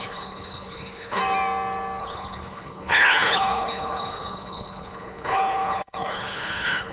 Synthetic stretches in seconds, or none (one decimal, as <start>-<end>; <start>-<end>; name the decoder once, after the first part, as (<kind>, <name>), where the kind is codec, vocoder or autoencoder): 0.0-1.2 (codec, HILCodec); 2.0-6.9